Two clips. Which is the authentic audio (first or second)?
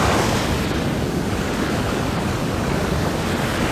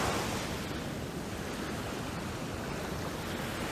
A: second